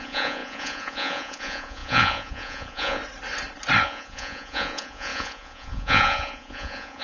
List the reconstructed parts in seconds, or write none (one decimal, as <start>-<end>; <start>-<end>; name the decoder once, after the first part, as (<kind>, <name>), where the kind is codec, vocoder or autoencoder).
0.0-3.0 (vocoder, Vocos); 3.8-7.0